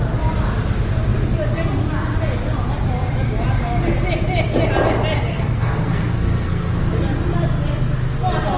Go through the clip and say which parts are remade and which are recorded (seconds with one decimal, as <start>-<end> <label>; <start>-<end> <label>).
0.0-5.3 recorded; 5.3-6.9 remade; 6.9-8.6 recorded